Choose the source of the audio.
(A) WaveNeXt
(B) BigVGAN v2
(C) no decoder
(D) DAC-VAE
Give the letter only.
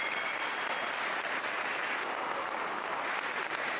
C